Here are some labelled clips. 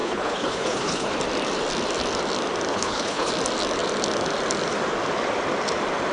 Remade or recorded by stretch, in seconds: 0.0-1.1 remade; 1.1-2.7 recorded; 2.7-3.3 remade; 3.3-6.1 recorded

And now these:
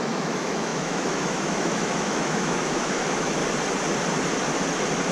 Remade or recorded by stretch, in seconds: 0.0-3.4 remade; 3.4-5.1 recorded

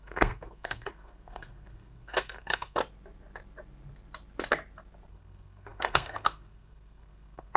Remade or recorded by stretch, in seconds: 0.0-2.8 remade; 2.8-5.1 recorded; 5.1-7.6 remade

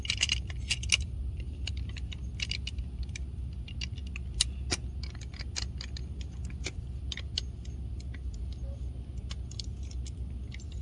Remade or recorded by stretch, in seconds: 0.0-10.8 recorded

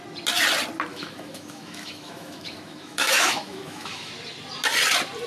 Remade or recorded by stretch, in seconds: 0.0-0.9 recorded; 0.9-4.1 remade; 4.1-5.3 recorded